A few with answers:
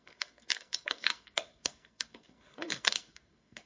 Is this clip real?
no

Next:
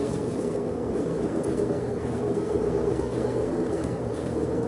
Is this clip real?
no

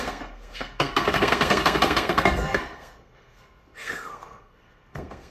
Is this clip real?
no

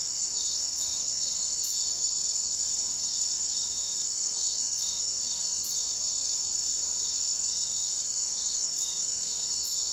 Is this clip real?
no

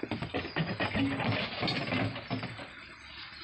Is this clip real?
yes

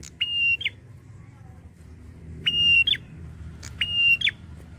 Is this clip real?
yes